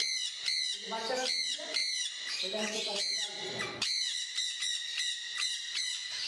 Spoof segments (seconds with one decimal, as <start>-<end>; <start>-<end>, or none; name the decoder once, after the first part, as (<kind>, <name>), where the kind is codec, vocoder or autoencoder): 1.8-4.6 (vocoder, BigVGAN v2); 5.3-6.3